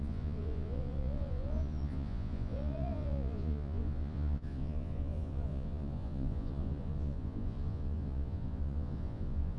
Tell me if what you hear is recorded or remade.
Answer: remade